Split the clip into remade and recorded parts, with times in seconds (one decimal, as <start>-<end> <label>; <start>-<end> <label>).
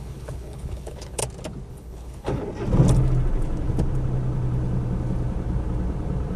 0.0-1.2 remade; 1.2-1.7 recorded; 1.7-2.4 remade; 2.4-6.4 recorded